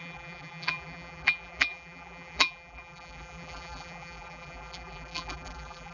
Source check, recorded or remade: remade